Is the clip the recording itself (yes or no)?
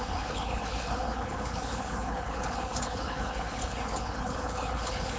no